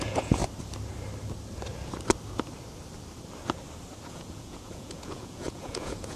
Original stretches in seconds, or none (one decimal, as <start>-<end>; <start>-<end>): 0.4-4.1